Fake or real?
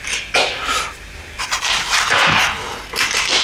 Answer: real